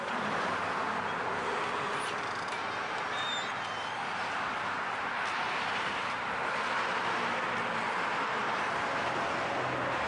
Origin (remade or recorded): recorded